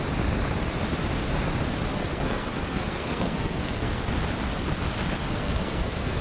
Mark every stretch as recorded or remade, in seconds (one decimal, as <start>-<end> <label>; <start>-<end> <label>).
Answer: 0.0-1.9 recorded; 1.9-4.0 remade; 4.0-5.2 recorded; 5.2-6.2 remade